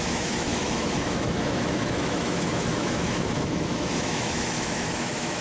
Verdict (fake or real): fake